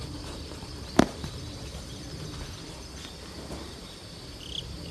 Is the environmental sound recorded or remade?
recorded